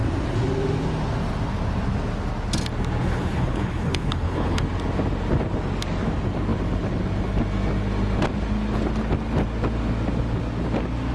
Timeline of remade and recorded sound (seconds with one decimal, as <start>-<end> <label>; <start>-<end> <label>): 0.0-3.0 recorded; 3.0-4.6 remade; 4.6-11.1 recorded